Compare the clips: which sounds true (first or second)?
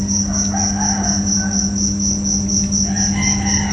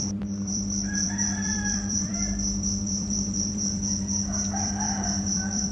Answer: first